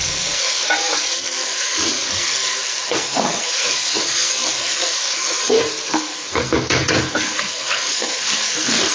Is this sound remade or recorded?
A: remade